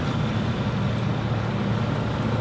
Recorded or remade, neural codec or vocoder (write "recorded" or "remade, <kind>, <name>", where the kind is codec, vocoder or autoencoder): recorded